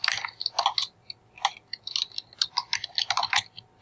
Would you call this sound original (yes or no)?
yes